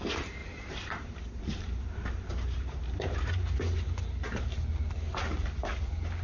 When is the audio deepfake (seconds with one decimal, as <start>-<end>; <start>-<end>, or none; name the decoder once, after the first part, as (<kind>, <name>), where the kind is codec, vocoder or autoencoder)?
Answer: 0.4-3.6 (vocoder, BigVGAN v2)